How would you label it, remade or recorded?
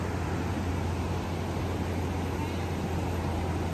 recorded